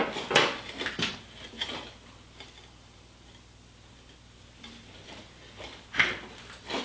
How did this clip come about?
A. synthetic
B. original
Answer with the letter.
B